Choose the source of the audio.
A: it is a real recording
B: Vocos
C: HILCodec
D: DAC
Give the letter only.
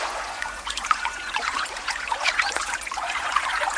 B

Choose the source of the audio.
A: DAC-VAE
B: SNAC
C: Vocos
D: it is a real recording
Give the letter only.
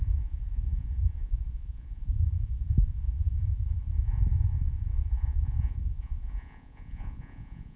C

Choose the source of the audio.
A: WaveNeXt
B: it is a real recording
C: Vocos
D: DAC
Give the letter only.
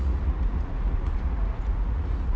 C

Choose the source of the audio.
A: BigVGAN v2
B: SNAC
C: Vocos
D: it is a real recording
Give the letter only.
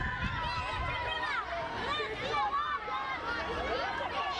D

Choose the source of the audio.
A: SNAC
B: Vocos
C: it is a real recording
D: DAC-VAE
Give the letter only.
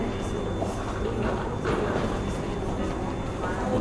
C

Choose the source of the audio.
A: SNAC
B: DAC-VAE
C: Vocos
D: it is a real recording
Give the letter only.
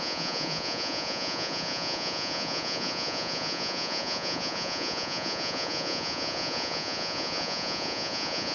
C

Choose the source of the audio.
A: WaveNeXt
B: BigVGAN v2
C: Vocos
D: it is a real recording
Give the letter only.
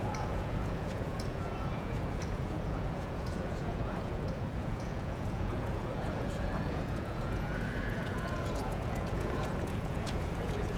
C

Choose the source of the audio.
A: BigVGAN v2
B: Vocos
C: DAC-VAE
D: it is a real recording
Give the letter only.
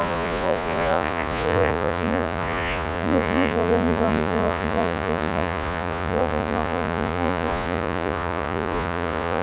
B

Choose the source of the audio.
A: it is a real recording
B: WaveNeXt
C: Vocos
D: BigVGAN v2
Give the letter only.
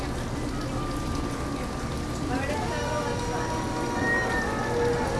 A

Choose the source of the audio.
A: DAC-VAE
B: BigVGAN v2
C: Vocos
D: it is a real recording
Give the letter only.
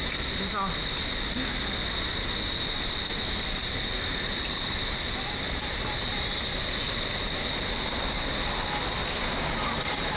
D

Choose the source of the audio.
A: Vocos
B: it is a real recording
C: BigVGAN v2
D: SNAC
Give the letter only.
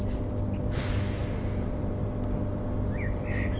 B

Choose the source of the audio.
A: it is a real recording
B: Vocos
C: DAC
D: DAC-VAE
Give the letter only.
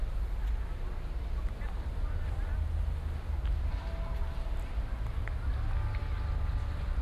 A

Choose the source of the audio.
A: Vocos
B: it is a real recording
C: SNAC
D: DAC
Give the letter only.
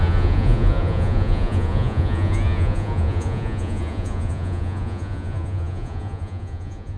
A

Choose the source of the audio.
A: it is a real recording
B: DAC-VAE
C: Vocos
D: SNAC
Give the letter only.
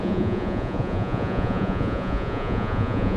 C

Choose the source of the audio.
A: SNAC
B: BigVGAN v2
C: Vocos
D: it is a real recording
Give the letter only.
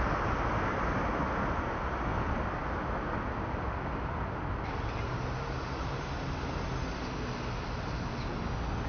D